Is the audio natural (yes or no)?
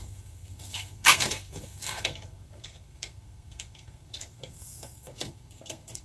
no